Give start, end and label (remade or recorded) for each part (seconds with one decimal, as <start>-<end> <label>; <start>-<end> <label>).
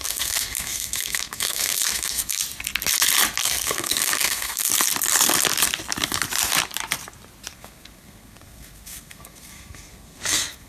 0.0-2.4 remade; 2.4-3.4 recorded; 3.4-4.7 remade; 4.7-7.5 recorded; 7.5-10.7 remade